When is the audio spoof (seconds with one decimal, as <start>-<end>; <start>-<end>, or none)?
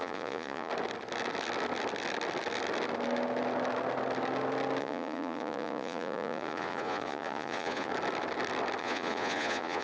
0.0-0.7; 4.8-7.9; 8.8-9.8